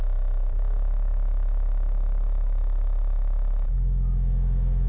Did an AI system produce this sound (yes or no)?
yes